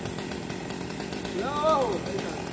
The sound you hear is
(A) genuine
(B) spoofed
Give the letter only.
A